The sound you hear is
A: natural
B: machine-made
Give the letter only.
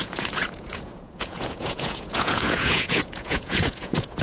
B